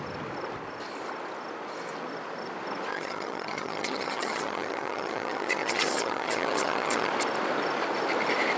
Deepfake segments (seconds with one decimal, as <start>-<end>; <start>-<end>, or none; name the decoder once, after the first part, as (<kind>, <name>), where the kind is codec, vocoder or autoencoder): 2.9-7.1 (vocoder, HiFi-GAN)